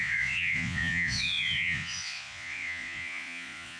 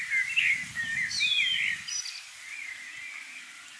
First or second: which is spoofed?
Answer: first